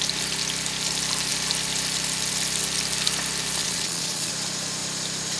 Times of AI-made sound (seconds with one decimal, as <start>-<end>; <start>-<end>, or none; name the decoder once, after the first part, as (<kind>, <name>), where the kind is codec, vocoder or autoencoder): 3.6-4.3 (vocoder, Vocos)